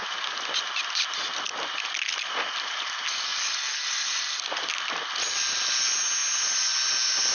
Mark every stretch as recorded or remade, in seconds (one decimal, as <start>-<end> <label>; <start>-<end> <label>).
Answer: 0.0-7.3 recorded